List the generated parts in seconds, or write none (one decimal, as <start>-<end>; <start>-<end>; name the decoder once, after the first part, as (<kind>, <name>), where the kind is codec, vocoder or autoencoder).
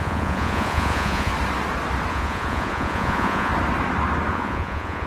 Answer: 0.0-1.3 (vocoder, Vocos); 2.1-3.5; 4.3-5.1